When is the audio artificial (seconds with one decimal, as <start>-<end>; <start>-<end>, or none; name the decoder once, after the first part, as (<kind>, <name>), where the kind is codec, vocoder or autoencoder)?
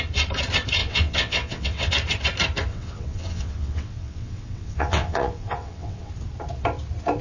0.8-1.9 (vocoder, WaveNeXt); 2.7-6.1